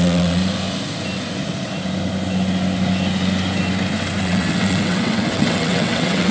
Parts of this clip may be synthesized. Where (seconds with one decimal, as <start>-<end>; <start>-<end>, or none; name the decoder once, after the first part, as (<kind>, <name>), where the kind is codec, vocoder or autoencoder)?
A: 0.0-0.4 (vocoder, WaveNeXt); 4.2-6.3